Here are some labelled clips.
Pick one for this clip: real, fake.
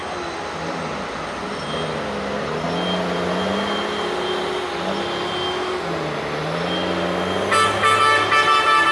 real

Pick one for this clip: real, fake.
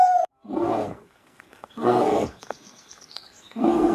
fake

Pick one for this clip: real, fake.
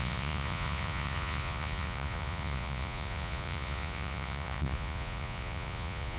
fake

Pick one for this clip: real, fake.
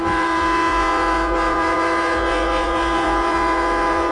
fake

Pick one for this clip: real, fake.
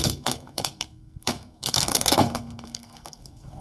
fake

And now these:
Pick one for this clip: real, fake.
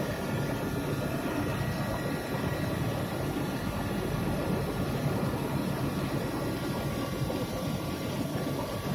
real